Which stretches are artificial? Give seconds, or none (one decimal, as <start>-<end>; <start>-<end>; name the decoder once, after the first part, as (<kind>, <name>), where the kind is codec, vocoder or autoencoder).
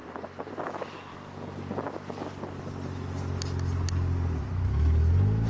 0.5-1.1 (autoencoder, DAC-VAE); 4.4-5.5